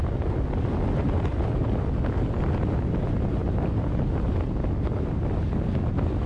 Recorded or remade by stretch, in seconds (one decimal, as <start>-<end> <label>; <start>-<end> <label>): 0.0-6.3 recorded